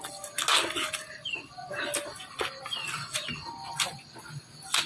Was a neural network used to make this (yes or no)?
no